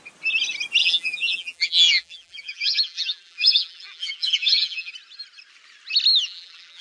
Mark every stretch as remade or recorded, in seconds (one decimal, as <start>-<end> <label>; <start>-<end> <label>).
0.0-0.8 recorded; 0.8-4.9 remade; 4.9-6.1 recorded; 6.1-6.8 remade